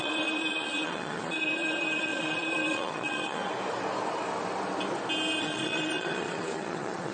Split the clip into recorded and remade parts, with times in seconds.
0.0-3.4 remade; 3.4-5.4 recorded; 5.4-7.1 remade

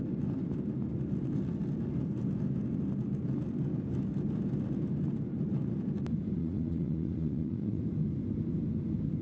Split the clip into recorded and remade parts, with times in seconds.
0.0-6.4 recorded; 6.4-7.8 remade; 7.8-9.2 recorded

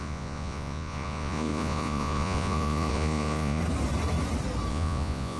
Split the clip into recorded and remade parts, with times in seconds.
0.0-3.6 remade; 3.6-4.7 recorded; 4.7-5.4 remade

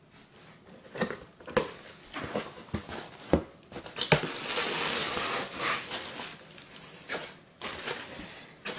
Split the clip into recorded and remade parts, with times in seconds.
0.0-8.8 recorded

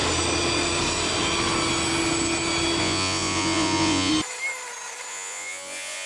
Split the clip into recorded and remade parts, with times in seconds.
0.0-2.8 recorded; 2.8-4.1 remade; 4.1-5.1 recorded; 5.1-6.1 remade

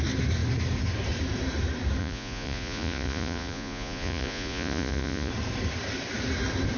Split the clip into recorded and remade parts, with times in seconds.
0.0-2.0 recorded; 2.0-5.3 remade; 5.3-6.8 recorded

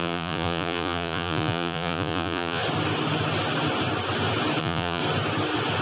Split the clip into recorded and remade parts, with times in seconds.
0.0-2.6 remade; 2.6-4.6 recorded; 4.6-5.0 remade; 5.0-5.8 recorded